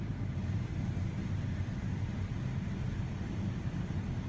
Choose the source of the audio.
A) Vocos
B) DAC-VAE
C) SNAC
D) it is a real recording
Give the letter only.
D